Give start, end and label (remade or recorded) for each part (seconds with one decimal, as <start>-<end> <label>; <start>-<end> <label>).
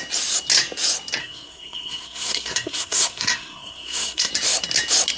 0.0-1.2 recorded; 1.2-4.3 remade; 4.3-5.2 recorded